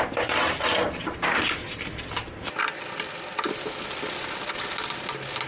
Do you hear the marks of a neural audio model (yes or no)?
no